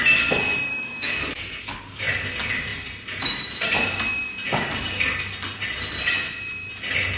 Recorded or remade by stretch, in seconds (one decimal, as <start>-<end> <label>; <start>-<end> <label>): 0.0-0.7 recorded; 0.7-2.0 remade; 2.0-7.2 recorded